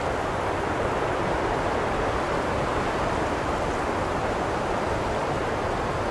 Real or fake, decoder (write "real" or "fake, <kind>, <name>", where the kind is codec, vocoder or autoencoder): fake, vocoder, BigVGAN v2